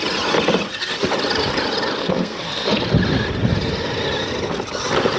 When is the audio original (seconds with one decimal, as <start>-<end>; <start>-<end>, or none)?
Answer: 0.0-2.0; 2.7-5.2